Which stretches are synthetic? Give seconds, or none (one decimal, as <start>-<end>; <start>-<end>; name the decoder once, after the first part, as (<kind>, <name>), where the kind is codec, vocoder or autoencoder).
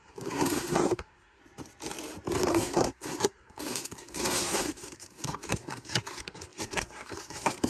0.0-1.4 (codec, SNAC); 2.5-7.7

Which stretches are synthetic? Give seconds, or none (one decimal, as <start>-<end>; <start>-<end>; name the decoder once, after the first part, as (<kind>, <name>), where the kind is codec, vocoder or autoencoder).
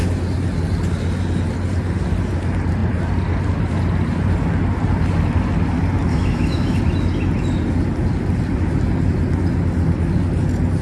6.1-6.8 (autoencoder, DAC-VAE)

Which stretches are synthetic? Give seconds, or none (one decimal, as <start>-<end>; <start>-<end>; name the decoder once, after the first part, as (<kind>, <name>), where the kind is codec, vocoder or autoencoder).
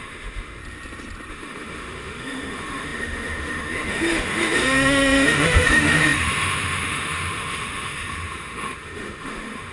0.0-0.6 (autoencoder, DAC-VAE); 1.3-9.7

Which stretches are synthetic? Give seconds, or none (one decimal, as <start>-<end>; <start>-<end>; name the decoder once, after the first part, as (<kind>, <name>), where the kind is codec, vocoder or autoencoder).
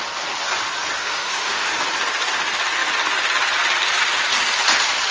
1.0-1.7 (autoencoder, DAC-VAE)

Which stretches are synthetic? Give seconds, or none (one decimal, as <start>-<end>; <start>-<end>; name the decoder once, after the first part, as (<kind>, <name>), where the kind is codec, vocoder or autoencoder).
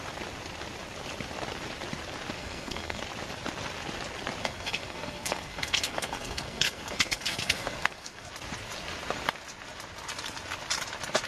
2.4-3.0 (codec, SNAC); 4.4-8.3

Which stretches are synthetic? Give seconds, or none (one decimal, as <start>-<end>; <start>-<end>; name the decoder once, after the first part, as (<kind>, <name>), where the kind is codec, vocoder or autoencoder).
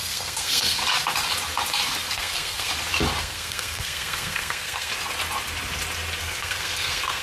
0.0-0.8 (codec, SNAC); 2.1-2.7; 3.2-4.9; 6.2-7.2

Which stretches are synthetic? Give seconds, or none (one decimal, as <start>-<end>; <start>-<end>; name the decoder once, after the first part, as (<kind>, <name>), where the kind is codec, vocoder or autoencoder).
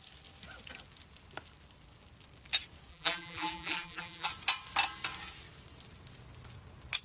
2.9-4.3 (vocoder, BigVGAN v2)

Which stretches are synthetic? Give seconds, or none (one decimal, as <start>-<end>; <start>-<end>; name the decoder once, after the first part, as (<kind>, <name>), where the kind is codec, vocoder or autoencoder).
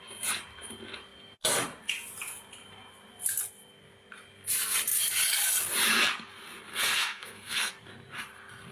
6.7-7.7 (codec, SNAC)